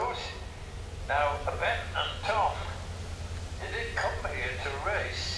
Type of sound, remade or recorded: recorded